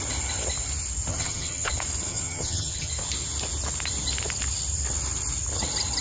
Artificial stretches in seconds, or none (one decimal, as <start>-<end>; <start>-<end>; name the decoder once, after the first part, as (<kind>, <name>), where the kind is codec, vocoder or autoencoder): 1.1-1.7 (vocoder, HiFi-GAN); 2.1-2.9